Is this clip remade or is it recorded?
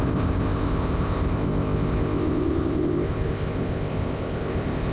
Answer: remade